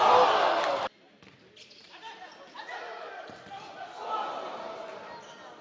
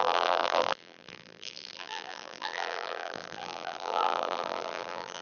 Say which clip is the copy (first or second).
second